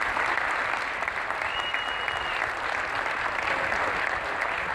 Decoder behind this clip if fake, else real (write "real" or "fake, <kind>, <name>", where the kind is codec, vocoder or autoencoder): real